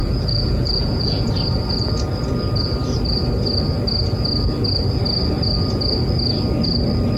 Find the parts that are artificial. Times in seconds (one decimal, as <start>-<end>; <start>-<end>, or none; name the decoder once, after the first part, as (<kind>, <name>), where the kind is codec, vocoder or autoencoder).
0.0-1.3 (vocoder, Vocos)